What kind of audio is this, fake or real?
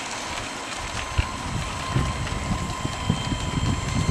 real